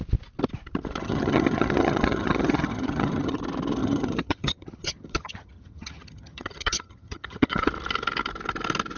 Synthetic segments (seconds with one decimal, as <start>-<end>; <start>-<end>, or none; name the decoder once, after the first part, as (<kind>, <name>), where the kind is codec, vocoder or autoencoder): 1.0-3.4 (vocoder, HiFi-GAN); 3.8-7.7